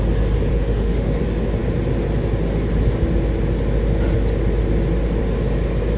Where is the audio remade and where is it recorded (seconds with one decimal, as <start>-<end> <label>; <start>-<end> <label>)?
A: 0.0-0.5 recorded; 0.5-1.2 remade; 1.2-6.0 recorded